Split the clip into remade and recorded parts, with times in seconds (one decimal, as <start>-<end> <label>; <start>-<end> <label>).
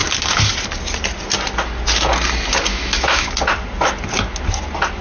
0.0-2.7 recorded; 2.7-3.3 remade; 3.3-5.0 recorded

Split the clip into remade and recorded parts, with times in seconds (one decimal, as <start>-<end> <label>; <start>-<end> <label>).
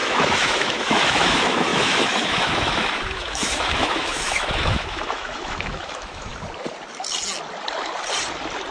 0.0-6.3 remade; 6.3-8.7 recorded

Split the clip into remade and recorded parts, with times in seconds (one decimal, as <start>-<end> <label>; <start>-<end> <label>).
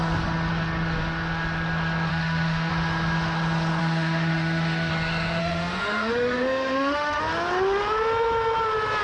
0.0-2.1 recorded; 2.1-2.7 remade; 2.7-3.8 recorded; 3.8-4.9 remade; 4.9-5.4 recorded; 5.4-7.2 remade; 7.2-9.0 recorded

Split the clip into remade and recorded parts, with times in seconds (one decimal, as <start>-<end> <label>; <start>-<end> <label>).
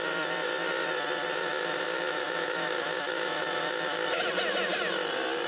0.0-1.4 recorded; 1.4-4.3 remade; 4.3-5.5 recorded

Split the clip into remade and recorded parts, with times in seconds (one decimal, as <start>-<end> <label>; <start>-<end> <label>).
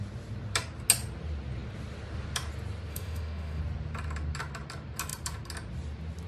0.0-2.9 recorded; 2.9-3.6 remade; 3.6-6.3 recorded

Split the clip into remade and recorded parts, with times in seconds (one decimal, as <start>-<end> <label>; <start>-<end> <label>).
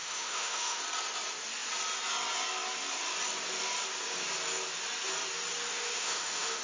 0.0-0.8 remade; 0.8-5.7 recorded; 5.7-6.6 remade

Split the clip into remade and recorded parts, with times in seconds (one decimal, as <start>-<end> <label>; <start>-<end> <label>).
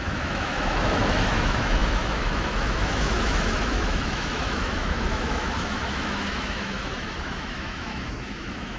0.0-8.8 remade